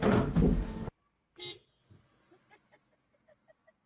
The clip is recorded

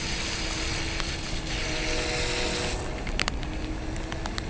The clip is recorded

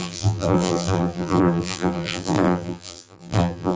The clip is remade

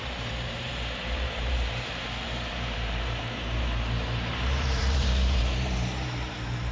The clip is remade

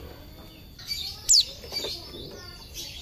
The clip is recorded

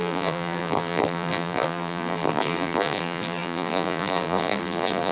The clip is remade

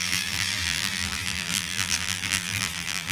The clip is remade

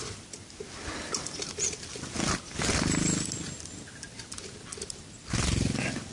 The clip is recorded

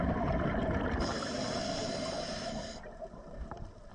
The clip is remade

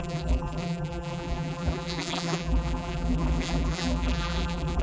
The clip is remade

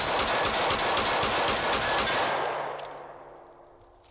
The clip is recorded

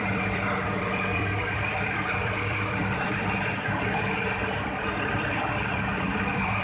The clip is remade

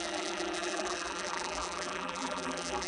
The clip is remade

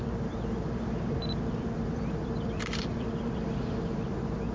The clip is remade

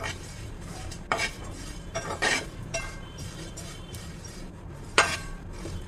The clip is remade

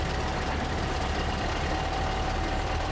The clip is remade